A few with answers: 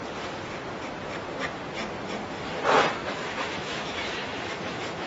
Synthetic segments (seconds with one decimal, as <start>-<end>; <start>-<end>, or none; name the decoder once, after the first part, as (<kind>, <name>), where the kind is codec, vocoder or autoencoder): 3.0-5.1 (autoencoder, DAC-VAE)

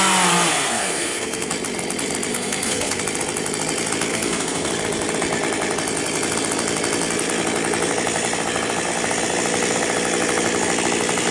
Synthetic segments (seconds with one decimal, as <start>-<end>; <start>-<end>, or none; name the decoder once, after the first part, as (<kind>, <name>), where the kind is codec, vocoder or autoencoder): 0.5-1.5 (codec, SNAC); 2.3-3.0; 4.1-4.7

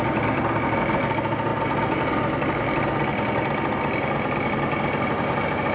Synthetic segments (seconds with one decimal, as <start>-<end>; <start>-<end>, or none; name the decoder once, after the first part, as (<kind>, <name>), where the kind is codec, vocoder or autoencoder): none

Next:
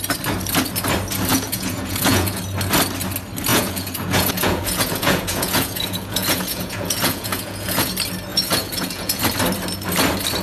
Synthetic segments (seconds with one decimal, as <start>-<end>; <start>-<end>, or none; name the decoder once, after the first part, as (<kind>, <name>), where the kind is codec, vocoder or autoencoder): 1.3-2.4 (vocoder, Vocos); 3.5-7.9; 8.3-9.2

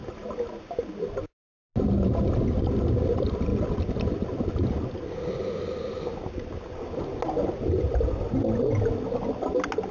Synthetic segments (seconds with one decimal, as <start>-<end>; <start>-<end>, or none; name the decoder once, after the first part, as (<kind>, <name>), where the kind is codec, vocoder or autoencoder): none

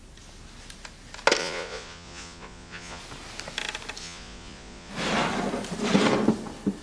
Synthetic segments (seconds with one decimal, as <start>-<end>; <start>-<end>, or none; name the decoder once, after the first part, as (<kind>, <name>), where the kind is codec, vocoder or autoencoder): 1.4-3.0 (vocoder, Vocos); 4.0-4.9

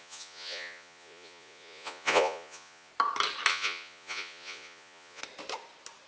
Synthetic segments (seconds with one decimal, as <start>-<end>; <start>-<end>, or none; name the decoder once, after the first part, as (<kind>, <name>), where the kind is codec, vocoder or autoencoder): 0.0-2.9 (vocoder, Vocos); 3.5-5.2

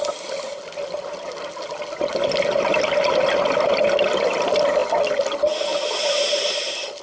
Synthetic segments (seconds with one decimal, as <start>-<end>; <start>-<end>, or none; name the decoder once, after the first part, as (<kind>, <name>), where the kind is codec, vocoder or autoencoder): none